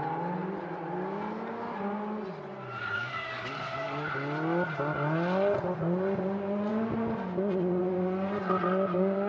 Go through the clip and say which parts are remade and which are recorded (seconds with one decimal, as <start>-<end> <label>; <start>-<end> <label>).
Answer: 0.0-3.0 recorded; 3.0-4.1 remade; 4.1-9.3 recorded